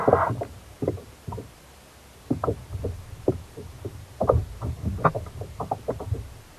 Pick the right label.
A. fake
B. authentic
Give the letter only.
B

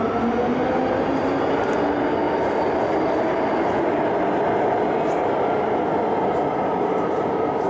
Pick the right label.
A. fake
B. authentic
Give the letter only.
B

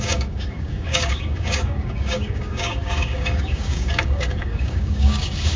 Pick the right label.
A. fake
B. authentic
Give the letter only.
A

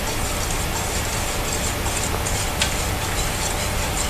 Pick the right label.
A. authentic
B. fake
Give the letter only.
A